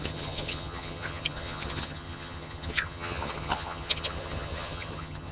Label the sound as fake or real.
fake